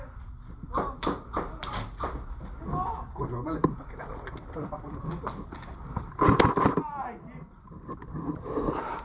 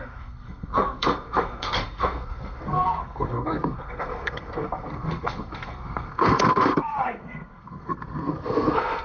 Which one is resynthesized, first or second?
second